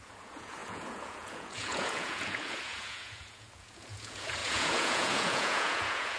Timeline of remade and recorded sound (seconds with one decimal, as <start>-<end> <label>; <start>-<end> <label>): 0.0-6.2 remade